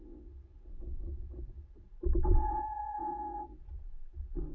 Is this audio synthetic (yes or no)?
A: yes